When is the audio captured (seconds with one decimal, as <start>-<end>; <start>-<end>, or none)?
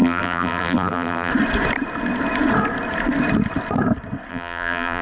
1.3-4.3